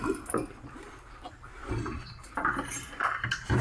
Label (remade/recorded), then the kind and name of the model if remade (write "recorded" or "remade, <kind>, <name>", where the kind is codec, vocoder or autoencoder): recorded